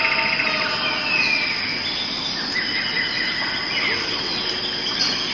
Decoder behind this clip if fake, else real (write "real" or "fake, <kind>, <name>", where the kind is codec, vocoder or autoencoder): real